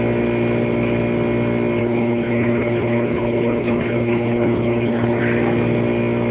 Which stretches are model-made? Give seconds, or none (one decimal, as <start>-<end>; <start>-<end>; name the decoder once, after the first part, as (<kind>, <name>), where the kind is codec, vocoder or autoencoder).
1.8-5.2 (codec, HILCodec)